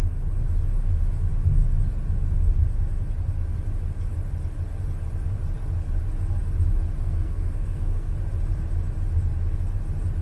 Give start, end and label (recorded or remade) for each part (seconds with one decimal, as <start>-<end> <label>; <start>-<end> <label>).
0.0-7.0 recorded; 7.0-8.1 remade; 8.1-10.2 recorded